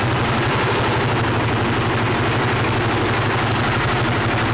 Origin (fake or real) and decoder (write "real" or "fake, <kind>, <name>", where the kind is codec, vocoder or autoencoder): real